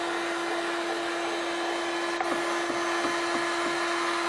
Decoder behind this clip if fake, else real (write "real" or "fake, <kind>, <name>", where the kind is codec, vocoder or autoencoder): real